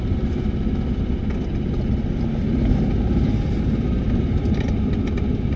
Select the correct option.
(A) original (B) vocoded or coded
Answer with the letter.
A